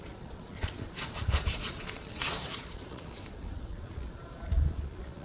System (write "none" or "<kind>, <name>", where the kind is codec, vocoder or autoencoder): vocoder, Vocos